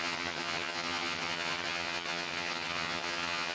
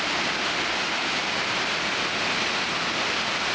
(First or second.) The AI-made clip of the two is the first